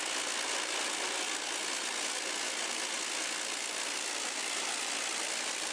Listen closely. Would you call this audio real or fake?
real